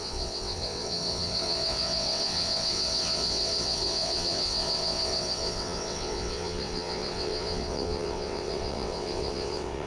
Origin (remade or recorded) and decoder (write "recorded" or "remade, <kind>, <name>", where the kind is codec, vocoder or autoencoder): remade, vocoder, WaveNeXt